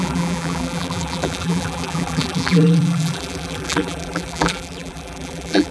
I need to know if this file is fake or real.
fake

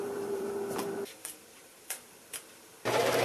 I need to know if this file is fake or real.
fake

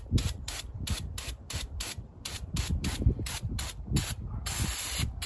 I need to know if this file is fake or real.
fake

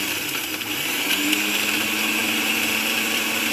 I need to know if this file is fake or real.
fake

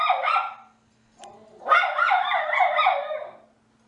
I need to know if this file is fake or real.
real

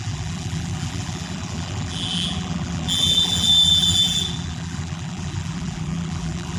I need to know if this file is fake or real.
fake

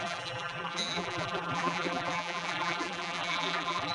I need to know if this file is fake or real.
fake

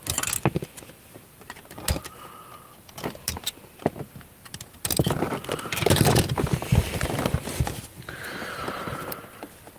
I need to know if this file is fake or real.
real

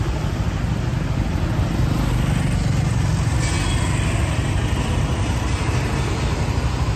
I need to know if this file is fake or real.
real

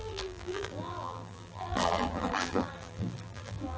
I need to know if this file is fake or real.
fake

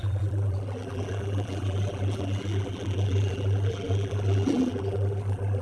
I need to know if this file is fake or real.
fake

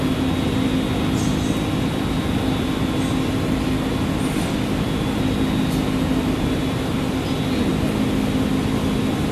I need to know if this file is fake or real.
real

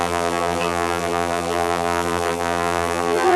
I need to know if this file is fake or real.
fake